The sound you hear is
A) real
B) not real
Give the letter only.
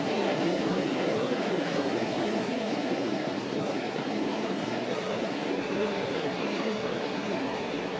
B